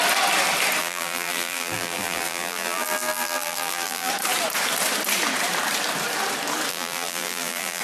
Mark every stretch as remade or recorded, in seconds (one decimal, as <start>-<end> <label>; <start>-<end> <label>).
0.0-0.8 recorded; 0.8-4.1 remade; 4.1-6.7 recorded; 6.7-7.8 remade